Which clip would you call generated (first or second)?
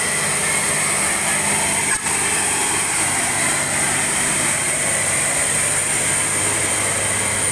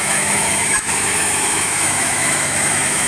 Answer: second